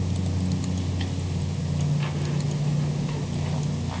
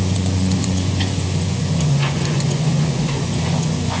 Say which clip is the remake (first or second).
second